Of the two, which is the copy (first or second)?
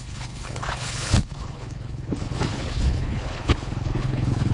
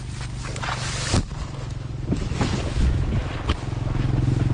first